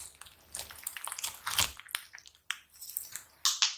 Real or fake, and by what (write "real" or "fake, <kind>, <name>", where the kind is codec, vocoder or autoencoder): real